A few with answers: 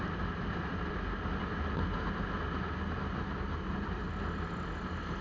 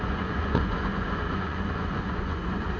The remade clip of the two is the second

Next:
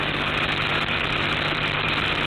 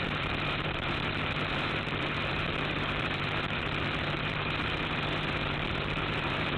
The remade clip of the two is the second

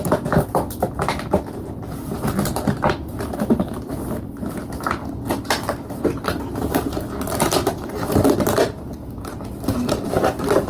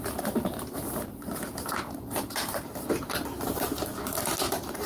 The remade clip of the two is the second